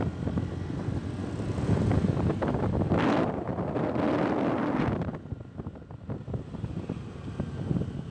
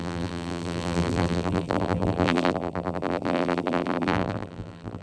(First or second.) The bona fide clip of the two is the first